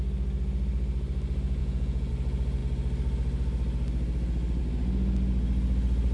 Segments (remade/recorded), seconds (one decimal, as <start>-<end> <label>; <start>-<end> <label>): 0.0-1.6 recorded; 1.6-2.1 remade; 2.1-6.1 recorded